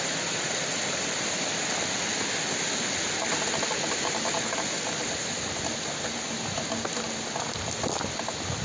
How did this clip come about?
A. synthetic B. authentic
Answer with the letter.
B